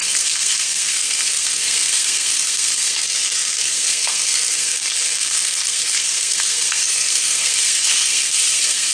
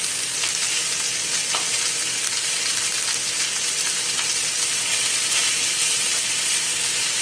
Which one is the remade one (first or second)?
first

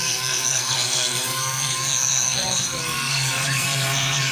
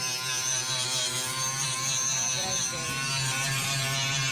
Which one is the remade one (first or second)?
first